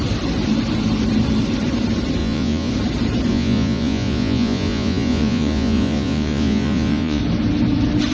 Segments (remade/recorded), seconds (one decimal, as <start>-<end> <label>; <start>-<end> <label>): 0.0-2.2 recorded; 2.2-2.7 remade; 2.7-3.3 recorded; 3.3-7.2 remade; 7.2-8.1 recorded